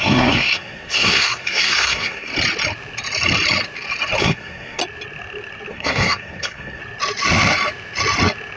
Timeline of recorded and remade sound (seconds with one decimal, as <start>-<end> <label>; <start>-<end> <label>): 0.0-2.3 remade; 2.3-4.2 recorded; 4.2-4.8 remade; 4.8-5.7 recorded; 5.7-6.8 remade; 6.8-8.6 recorded